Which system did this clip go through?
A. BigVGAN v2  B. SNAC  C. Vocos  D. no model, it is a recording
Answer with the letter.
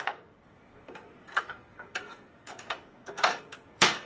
B